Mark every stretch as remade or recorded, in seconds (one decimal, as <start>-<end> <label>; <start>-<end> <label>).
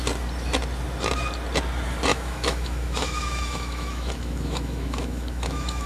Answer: 0.0-2.1 recorded; 2.1-5.9 remade